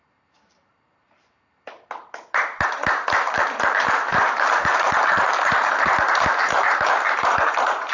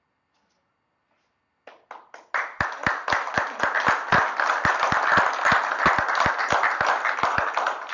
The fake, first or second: first